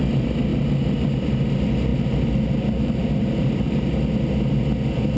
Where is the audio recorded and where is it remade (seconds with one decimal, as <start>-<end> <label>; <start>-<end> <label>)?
0.0-1.9 recorded; 1.9-3.9 remade; 3.9-5.2 recorded